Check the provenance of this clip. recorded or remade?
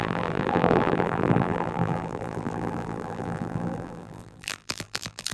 remade